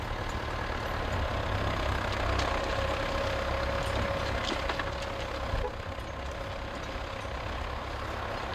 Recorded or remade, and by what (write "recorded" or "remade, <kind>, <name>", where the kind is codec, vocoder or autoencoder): recorded